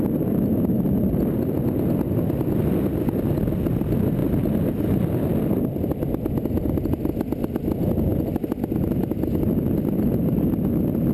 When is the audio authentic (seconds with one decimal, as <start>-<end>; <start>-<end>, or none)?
0.0-4.2; 5.2-11.1